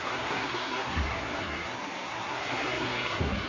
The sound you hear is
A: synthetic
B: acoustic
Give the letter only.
A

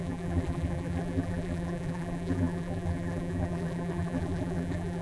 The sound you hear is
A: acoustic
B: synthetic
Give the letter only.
B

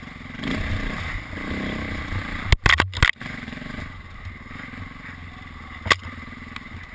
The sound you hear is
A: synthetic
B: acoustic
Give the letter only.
B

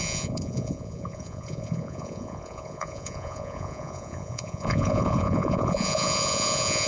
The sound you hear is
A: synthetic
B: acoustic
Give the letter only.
A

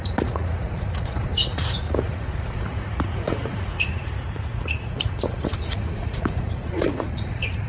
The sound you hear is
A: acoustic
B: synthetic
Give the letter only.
B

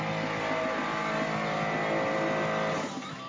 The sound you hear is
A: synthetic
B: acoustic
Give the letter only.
B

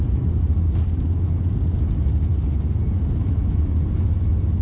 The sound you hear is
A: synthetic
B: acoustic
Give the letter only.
B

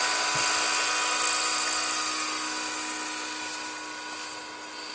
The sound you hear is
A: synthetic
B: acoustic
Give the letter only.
B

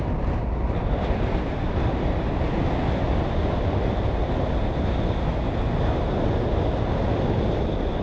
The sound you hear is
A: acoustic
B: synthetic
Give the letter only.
A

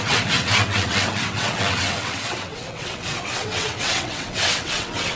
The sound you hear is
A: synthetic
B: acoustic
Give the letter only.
A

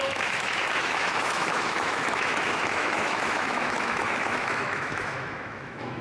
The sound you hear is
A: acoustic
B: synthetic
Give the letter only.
B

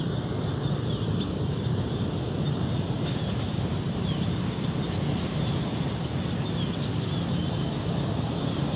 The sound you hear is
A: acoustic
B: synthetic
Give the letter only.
A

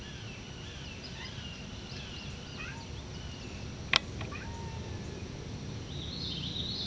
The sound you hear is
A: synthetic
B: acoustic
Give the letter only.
B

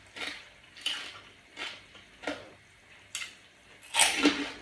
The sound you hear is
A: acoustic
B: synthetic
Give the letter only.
A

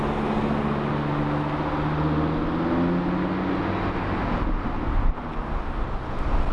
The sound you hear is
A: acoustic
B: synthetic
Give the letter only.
A